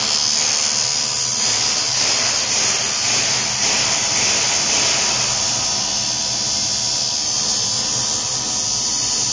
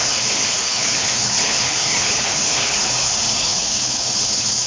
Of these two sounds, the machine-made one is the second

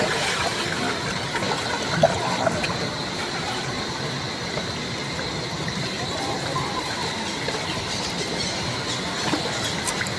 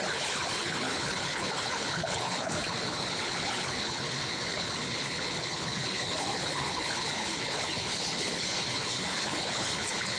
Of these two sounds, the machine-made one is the second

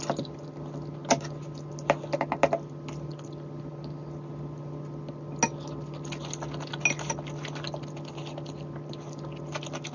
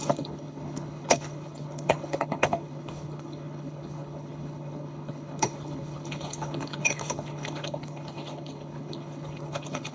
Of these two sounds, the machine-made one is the second